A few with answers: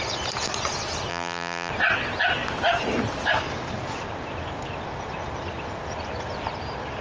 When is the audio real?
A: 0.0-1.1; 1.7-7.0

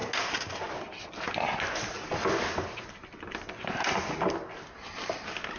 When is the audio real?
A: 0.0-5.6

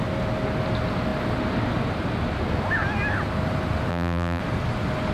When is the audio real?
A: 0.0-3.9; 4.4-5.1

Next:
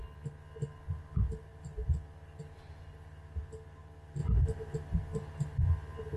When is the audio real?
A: 0.0-6.2